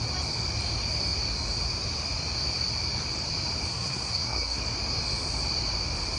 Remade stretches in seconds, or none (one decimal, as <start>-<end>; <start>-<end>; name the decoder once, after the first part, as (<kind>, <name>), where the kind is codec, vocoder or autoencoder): 3.7-4.6 (codec, SNAC)